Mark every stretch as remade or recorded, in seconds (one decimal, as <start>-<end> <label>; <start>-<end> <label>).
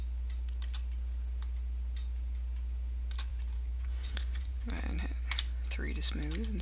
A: 0.0-3.3 recorded; 3.3-5.0 remade; 5.0-6.6 recorded